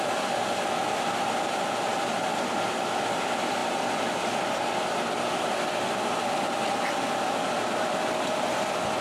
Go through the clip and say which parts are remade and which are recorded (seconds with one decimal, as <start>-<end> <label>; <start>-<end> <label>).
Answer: 0.0-9.0 recorded